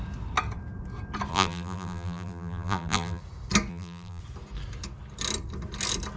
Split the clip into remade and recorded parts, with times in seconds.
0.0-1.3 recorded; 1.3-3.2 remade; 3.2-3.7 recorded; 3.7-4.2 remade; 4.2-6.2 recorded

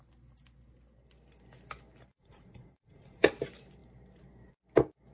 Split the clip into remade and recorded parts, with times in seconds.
0.0-2.1 recorded; 2.1-3.3 remade; 3.3-5.1 recorded

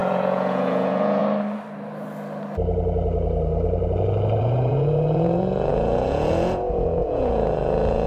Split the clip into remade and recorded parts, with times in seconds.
0.0-1.2 remade; 1.2-4.4 recorded; 4.4-8.1 remade